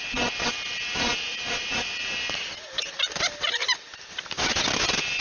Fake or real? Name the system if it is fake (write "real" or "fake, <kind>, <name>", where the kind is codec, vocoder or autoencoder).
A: real